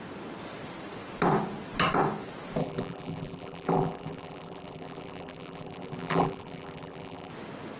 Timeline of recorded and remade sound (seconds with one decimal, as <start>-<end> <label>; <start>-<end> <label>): 0.0-2.6 recorded; 2.6-7.3 remade; 7.3-7.8 recorded